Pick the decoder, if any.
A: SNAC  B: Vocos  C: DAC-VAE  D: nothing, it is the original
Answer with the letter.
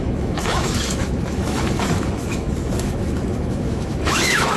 C